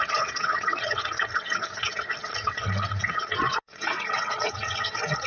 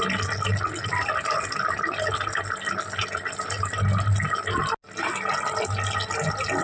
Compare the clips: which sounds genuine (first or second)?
second